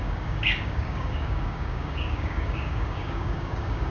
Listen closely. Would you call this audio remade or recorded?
remade